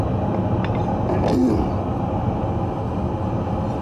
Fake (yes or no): no